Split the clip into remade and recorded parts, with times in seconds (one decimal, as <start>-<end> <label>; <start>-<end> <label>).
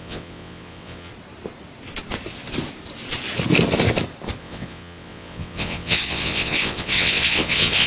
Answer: 0.0-1.1 remade; 1.1-4.4 recorded; 4.4-7.9 remade